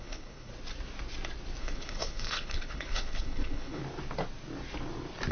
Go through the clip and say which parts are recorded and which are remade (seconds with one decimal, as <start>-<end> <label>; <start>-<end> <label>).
0.0-0.5 remade; 0.5-1.6 recorded; 1.6-3.8 remade; 3.8-5.3 recorded